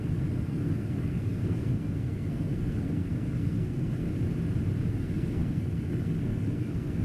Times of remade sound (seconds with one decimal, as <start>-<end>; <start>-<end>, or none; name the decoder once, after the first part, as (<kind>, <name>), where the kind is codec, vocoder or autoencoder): 0.0-4.1 (codec, SNAC); 4.9-7.0